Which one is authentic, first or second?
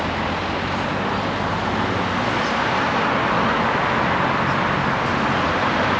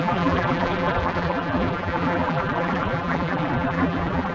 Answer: first